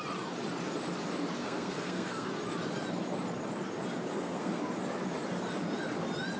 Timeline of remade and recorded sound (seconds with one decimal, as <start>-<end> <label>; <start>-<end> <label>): 0.0-1.4 recorded; 1.4-2.3 remade; 2.3-4.1 recorded; 4.1-4.6 remade; 4.6-6.4 recorded